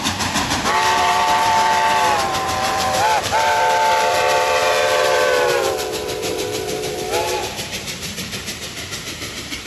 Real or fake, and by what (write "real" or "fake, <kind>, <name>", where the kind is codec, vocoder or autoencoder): fake, vocoder, BigVGAN v2